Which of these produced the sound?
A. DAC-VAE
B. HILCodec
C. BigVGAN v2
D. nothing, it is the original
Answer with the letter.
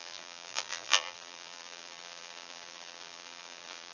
C